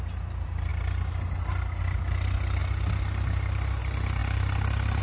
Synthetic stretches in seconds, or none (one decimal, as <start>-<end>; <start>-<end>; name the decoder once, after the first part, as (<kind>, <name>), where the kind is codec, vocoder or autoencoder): none